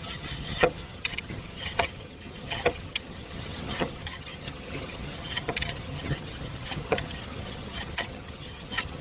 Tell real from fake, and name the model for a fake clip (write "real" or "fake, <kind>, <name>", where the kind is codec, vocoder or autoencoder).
fake, vocoder, HiFi-GAN